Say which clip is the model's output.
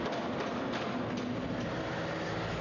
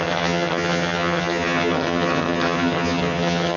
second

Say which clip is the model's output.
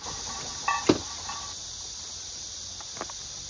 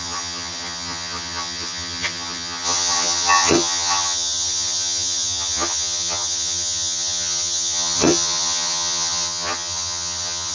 second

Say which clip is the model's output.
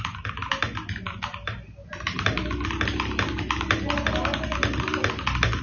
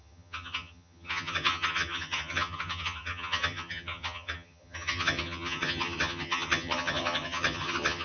second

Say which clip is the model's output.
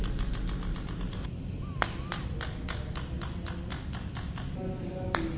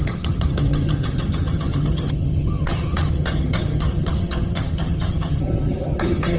second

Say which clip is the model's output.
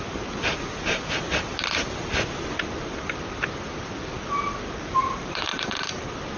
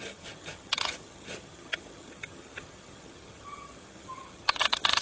second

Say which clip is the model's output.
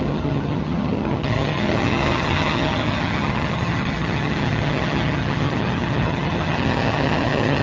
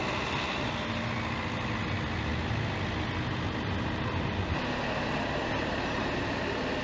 first